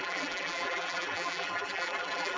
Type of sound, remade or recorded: remade